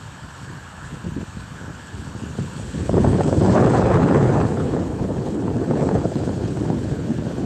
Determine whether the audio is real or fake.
fake